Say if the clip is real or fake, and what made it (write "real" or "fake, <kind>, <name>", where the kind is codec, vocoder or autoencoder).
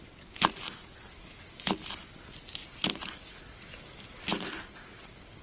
real